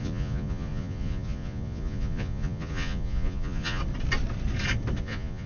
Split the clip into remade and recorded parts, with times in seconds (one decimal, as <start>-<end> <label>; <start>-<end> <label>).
0.0-3.8 remade; 3.8-5.0 recorded; 5.0-5.5 remade